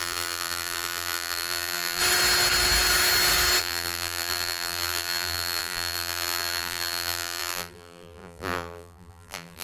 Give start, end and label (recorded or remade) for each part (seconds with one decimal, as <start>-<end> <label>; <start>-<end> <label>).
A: 0.0-2.0 remade; 2.0-3.6 recorded; 3.6-9.6 remade